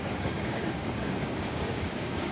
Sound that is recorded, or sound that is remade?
remade